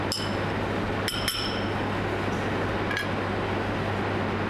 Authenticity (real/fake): real